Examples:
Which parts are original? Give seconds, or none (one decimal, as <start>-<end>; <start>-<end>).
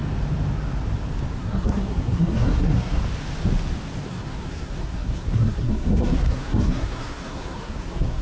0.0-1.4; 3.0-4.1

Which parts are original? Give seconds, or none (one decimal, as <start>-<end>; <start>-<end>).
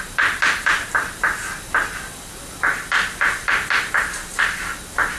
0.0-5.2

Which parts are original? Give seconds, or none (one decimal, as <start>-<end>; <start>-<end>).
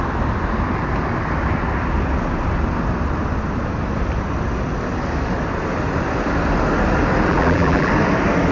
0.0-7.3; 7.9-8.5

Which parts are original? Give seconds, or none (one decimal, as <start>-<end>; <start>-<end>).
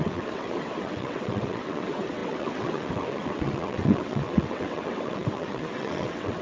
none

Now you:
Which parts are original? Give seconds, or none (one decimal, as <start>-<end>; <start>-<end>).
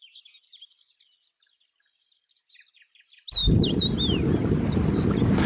0.0-5.5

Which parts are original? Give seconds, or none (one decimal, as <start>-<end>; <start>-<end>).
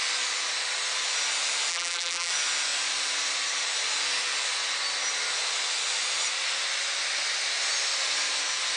0.0-1.7; 2.3-8.8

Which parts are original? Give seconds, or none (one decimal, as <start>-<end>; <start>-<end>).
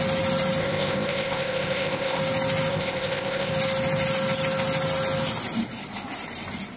0.0-0.6; 2.2-2.7; 3.5-6.8